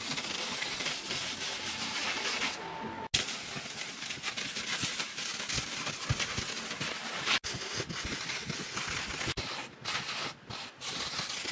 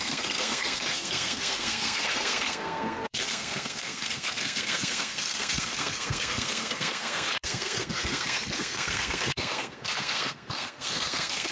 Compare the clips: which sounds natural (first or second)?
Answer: first